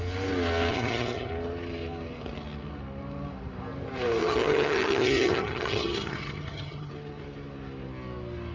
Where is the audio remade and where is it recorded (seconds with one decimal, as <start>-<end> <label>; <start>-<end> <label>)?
0.0-0.7 recorded; 0.7-1.3 remade; 1.3-4.2 recorded; 4.2-6.9 remade; 6.9-8.5 recorded

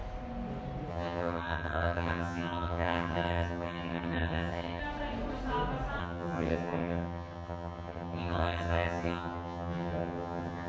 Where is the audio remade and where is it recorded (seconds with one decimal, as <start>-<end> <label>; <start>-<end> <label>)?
0.0-0.9 recorded; 0.9-4.8 remade; 4.8-6.0 recorded; 6.0-10.7 remade